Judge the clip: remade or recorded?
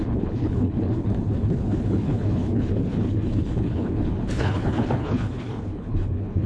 remade